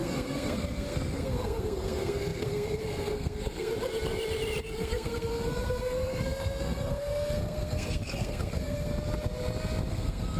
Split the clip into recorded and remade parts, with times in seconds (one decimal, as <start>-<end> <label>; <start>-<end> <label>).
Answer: 0.0-3.7 remade; 3.7-4.6 recorded; 4.6-8.9 remade; 8.9-9.9 recorded; 9.9-10.4 remade